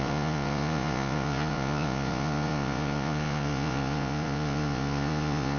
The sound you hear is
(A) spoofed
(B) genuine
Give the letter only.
A